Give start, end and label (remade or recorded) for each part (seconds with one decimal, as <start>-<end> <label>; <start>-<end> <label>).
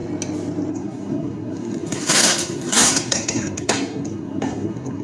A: 0.0-0.7 recorded; 0.7-5.0 remade